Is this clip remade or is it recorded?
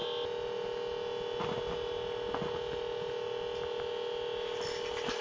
recorded